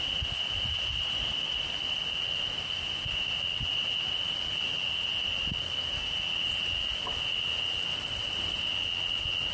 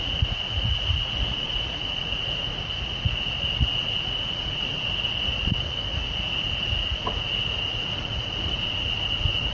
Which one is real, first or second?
first